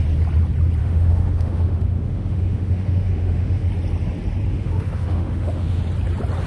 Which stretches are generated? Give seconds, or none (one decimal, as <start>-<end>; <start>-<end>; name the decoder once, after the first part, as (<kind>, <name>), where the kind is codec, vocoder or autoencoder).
0.8-3.7 (autoencoder, DAC-VAE); 4.5-5.8